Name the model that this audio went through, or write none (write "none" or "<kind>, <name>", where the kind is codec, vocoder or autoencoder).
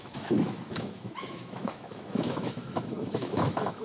autoencoder, DAC-VAE